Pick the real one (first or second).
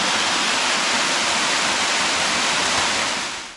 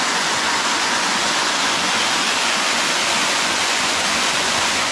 first